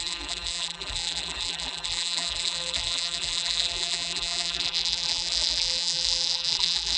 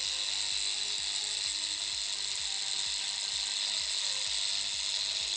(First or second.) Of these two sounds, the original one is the second